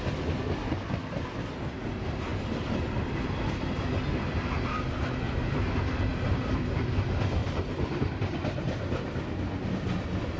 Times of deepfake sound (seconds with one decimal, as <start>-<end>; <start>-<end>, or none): 6.1-6.8; 7.4-8.1